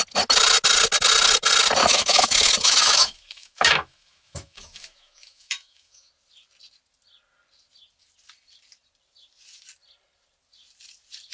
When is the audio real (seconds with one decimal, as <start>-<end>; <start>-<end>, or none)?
0.0-1.8; 6.1-11.3